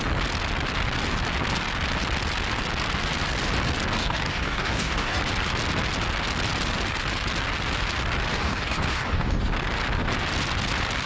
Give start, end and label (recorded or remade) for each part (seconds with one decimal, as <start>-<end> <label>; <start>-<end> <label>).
0.0-4.0 recorded; 4.0-5.2 remade; 5.2-8.3 recorded; 8.3-9.4 remade; 9.4-11.1 recorded